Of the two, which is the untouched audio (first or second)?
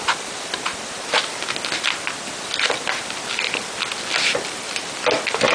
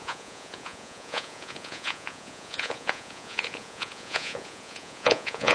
first